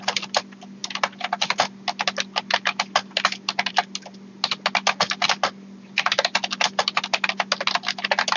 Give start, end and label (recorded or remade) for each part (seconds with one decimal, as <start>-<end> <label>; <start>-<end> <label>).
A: 0.0-8.4 recorded